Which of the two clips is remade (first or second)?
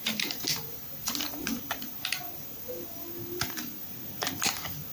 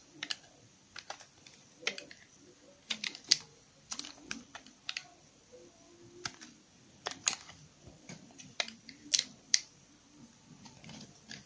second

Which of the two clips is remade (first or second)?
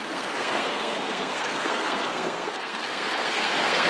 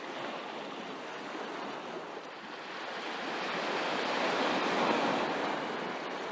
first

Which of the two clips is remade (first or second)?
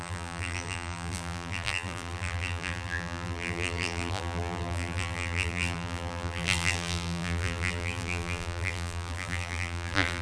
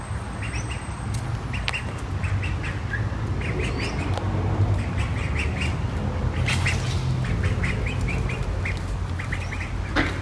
first